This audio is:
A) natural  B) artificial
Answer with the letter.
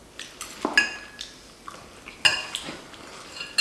A